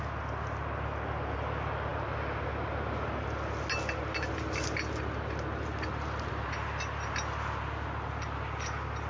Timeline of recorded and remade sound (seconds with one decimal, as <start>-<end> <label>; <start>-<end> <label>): 0.0-9.1 recorded